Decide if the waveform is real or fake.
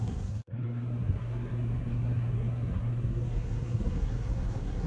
fake